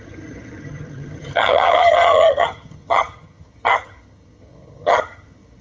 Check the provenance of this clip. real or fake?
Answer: fake